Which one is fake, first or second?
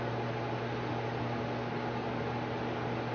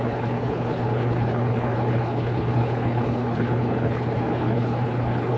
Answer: second